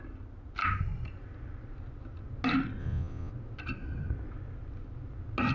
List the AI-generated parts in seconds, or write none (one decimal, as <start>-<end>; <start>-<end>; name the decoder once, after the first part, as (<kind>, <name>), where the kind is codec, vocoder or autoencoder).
2.8-3.3 (vocoder, Vocos)